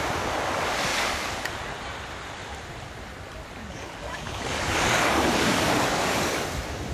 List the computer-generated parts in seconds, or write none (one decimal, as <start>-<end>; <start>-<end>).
0.9-1.5; 3.6-6.4

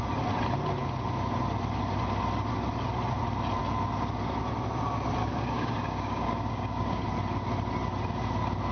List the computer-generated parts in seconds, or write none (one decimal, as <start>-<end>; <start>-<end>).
5.2-7.0

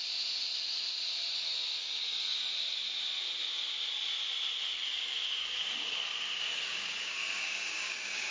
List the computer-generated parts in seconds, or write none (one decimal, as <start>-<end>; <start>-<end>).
1.8-2.4; 4.7-8.3

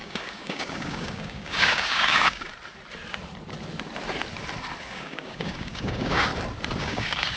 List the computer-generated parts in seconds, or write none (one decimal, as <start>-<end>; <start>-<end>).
0.0-2.5; 4.8-6.3; 6.8-7.4